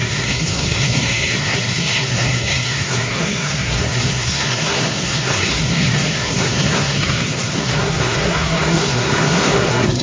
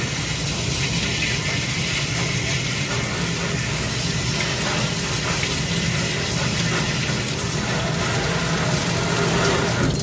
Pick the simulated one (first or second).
first